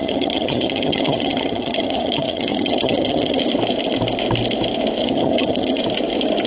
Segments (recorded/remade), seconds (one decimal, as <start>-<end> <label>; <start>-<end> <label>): 0.0-3.4 remade; 3.4-5.0 recorded; 5.0-5.8 remade; 5.8-6.5 recorded